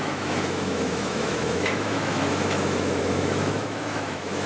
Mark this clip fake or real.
fake